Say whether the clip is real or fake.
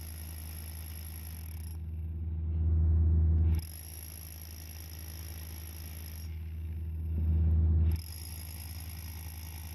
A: real